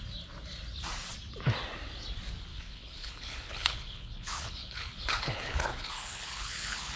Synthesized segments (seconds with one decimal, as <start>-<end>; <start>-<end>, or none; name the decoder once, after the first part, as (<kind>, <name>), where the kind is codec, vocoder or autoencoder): 2.5-7.0 (codec, HILCodec)